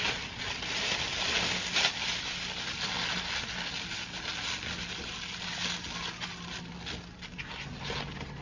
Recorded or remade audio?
recorded